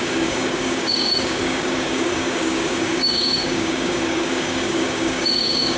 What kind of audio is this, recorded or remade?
remade